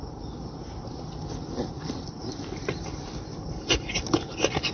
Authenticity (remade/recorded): recorded